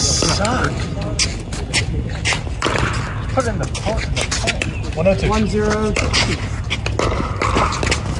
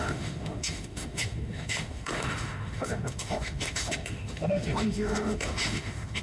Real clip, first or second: first